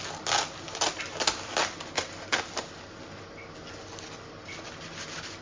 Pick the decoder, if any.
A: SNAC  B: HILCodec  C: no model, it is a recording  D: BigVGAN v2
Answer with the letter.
C